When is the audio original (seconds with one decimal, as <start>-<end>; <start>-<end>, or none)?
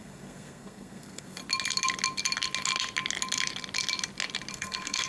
1.4-4.5